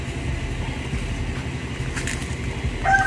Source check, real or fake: real